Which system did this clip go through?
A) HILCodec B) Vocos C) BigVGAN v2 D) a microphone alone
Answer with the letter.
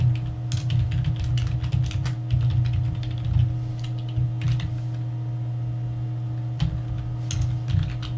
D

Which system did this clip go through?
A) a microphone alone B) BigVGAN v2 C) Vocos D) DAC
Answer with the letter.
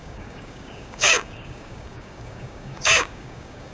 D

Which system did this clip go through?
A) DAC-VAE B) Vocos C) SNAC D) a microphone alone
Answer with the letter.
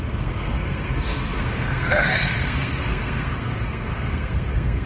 C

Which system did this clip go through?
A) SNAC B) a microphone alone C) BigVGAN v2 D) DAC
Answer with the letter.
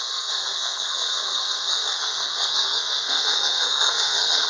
A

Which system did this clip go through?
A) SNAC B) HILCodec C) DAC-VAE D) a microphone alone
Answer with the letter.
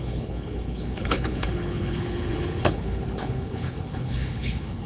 B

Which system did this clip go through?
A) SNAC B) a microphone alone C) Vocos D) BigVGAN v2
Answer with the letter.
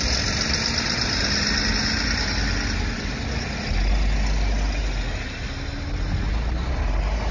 B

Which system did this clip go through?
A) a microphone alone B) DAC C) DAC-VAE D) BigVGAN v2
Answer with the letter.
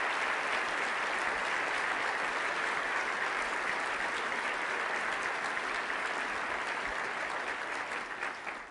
A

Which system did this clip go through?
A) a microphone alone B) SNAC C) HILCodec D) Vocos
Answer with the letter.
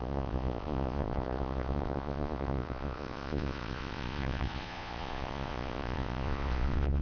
D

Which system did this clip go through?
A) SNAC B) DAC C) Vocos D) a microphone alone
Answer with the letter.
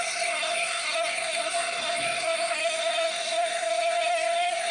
A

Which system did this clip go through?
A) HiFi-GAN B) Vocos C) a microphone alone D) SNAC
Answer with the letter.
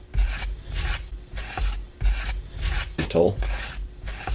C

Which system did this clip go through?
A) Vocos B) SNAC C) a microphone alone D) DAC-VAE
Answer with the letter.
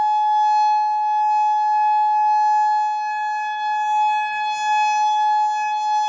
C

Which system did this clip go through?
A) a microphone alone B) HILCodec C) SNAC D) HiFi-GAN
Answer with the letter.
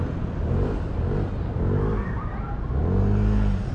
A